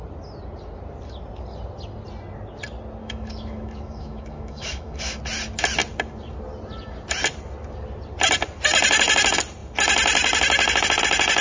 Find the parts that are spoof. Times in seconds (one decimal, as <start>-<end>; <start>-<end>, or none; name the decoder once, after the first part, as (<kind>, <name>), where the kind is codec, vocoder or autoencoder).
3.0-5.2 (autoencoder, DAC-VAE)